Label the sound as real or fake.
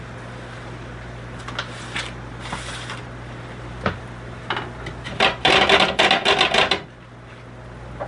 real